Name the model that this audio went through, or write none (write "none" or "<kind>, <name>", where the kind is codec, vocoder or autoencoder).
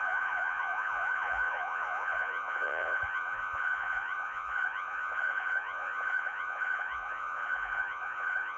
vocoder, Vocos